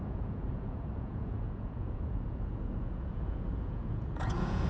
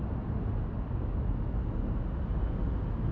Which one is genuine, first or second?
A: second